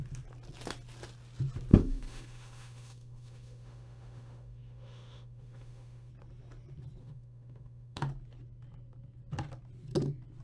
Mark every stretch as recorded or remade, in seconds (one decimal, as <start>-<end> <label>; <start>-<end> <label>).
0.0-1.7 recorded; 1.7-6.1 remade; 6.1-7.0 recorded; 7.0-8.1 remade; 8.1-10.4 recorded